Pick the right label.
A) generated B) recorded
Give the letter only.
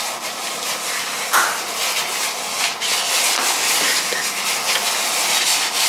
B